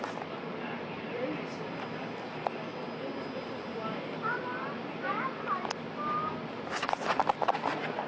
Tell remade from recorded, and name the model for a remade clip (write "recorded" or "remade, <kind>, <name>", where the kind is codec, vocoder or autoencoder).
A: recorded